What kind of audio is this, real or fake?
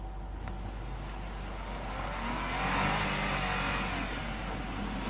real